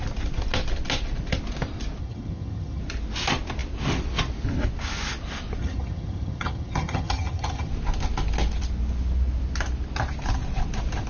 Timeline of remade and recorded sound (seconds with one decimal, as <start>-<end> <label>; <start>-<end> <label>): 0.0-2.0 recorded; 2.0-2.8 remade; 2.8-5.6 recorded; 5.6-7.7 remade; 7.7-11.1 recorded